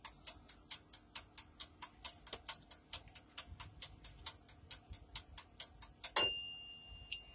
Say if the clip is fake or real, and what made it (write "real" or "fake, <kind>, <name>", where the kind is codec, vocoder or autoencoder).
real